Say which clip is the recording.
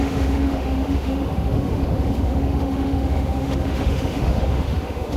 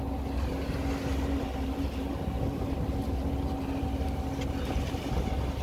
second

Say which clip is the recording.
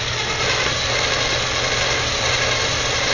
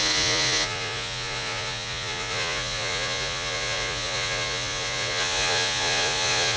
first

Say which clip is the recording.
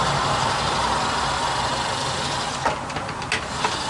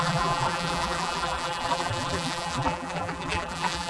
first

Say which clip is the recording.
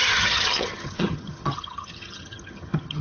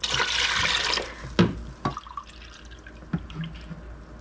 second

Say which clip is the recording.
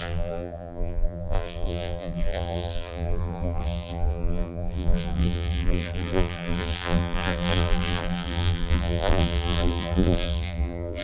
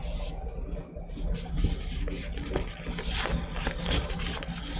second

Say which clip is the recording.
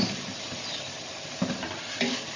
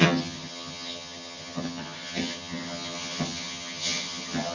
first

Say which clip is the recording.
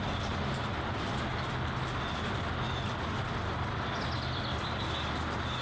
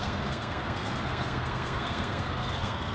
first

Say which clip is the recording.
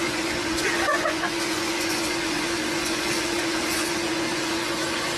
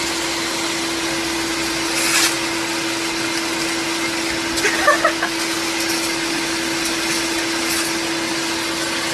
second